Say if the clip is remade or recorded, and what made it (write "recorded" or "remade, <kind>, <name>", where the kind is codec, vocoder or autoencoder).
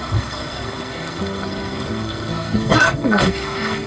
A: remade, codec, SNAC